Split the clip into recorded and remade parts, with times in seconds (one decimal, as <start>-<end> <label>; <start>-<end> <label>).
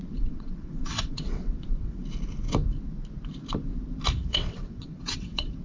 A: 0.0-2.0 remade; 2.0-4.2 recorded; 4.2-5.6 remade